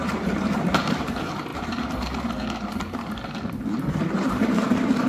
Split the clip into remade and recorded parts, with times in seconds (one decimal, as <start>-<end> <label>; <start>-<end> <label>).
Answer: 0.0-5.1 remade